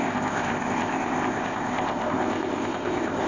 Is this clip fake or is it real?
fake